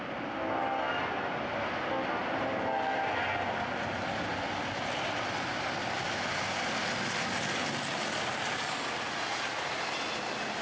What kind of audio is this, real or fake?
real